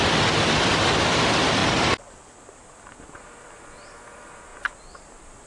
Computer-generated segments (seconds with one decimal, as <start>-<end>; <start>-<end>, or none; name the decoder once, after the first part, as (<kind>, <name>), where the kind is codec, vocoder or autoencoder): none